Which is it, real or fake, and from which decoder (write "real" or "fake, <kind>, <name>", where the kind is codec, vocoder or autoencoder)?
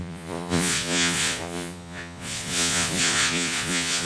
fake, vocoder, Vocos